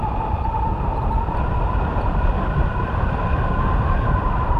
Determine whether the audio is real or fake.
real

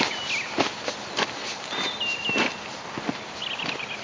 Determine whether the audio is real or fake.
real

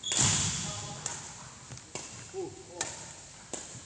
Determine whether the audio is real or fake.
real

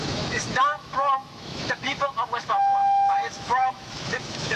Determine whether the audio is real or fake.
fake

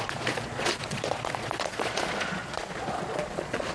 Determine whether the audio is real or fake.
fake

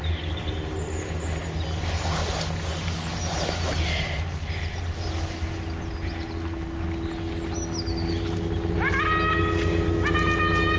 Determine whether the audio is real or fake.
real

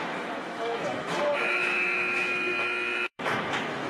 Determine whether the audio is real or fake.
fake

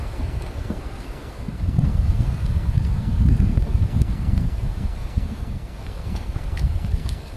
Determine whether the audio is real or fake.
fake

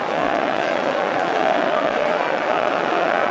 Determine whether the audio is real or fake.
fake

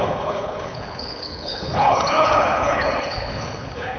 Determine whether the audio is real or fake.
fake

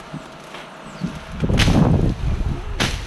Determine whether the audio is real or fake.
real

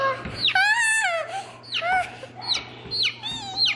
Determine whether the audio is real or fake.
real